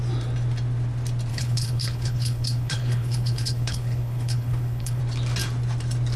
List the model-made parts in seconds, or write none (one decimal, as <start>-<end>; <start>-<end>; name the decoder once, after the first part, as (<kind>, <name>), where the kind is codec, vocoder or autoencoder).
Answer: 1.3-5.0 (codec, HILCodec)

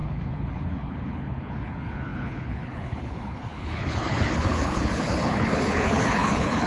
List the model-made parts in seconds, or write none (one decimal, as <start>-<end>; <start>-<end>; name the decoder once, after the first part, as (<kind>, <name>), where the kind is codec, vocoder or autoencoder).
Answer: 0.0-6.7 (codec, HILCodec)